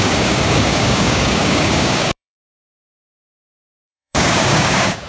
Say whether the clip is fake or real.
fake